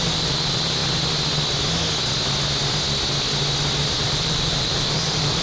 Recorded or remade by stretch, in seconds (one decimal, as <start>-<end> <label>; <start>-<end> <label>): 0.0-0.8 remade; 0.8-4.0 recorded; 4.0-5.4 remade